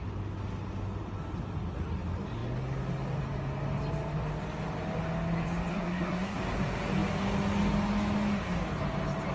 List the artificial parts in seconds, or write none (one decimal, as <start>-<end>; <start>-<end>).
5.7-6.4